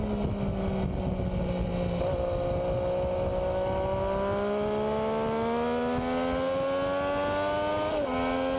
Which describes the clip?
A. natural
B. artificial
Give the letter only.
A